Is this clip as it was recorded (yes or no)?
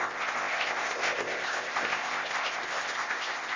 no